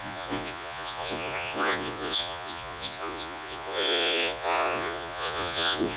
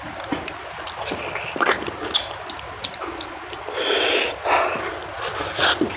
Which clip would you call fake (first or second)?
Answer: first